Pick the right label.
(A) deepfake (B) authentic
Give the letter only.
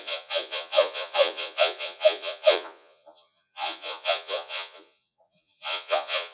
A